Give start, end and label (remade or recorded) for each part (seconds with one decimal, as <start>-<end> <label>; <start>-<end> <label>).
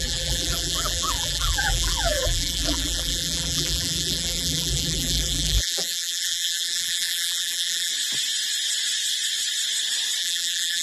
0.0-7.9 remade; 7.9-10.2 recorded; 10.2-10.8 remade